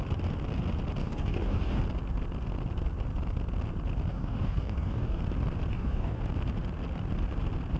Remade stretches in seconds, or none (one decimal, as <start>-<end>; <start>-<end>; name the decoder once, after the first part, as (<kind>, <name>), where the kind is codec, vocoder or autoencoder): 1.0-1.8 (codec, DAC); 4.1-5.2; 5.7-6.2